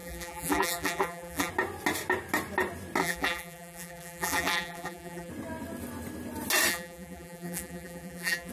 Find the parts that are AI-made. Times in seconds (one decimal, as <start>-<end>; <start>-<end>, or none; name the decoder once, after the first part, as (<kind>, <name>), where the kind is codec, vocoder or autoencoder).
0.0-1.5 (vocoder, BigVGAN v2); 3.0-5.3; 6.7-8.5